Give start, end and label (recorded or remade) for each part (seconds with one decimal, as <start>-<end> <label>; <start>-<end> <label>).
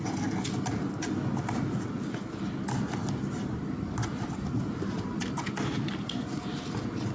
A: 0.0-7.1 recorded